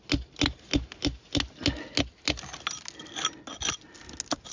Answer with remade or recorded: recorded